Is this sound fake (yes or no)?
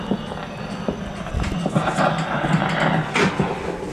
no